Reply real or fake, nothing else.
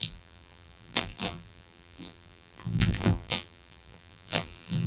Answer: fake